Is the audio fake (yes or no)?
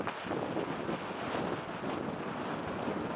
no